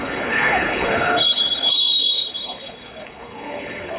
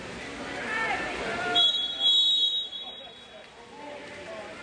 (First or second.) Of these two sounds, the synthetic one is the first